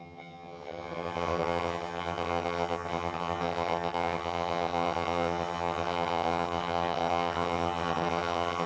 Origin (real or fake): fake